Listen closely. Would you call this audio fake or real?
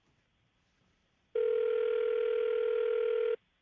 real